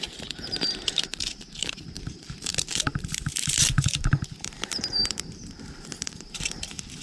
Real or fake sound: fake